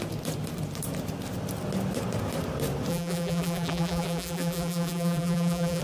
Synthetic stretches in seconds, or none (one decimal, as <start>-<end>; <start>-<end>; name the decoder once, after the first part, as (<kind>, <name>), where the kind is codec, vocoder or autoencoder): 2.9-5.8 (vocoder, BigVGAN v2)